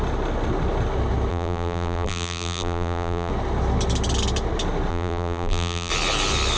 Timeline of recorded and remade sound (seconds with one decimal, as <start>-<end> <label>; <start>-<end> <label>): 0.0-1.3 recorded; 1.3-3.3 remade; 3.3-4.9 recorded; 4.9-5.9 remade; 5.9-6.6 recorded